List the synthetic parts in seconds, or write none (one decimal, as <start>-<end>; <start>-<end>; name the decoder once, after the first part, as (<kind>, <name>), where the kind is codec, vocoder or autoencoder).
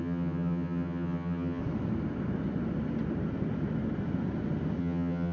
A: 0.0-1.6 (vocoder, HiFi-GAN); 4.8-5.3